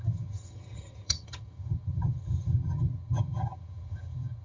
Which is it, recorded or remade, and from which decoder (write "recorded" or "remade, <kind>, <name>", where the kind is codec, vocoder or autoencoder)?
remade, vocoder, HiFi-GAN